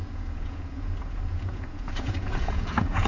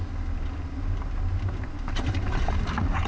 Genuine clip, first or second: second